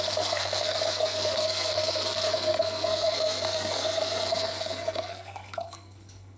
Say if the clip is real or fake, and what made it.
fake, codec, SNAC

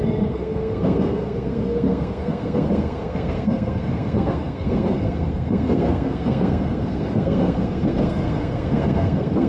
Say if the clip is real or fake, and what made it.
fake, codec, SNAC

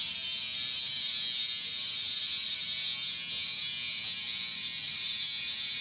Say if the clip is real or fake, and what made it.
real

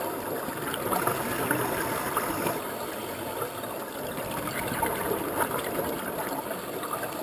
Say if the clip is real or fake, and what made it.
real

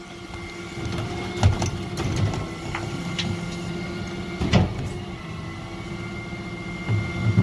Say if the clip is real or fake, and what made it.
real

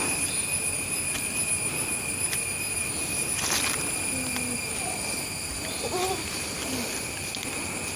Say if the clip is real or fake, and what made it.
real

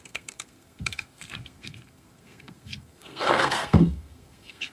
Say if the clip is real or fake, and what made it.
fake, codec, SNAC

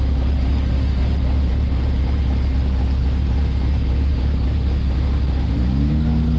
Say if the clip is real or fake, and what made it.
real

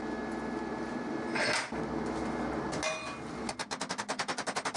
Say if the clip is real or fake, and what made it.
real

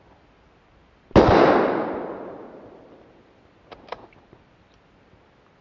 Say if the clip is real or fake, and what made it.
real